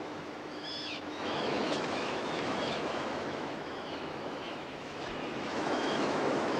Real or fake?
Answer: fake